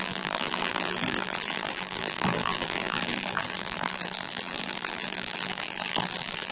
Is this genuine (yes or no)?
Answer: no